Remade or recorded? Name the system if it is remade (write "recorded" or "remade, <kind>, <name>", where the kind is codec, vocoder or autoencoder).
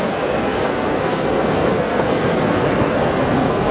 remade, codec, SNAC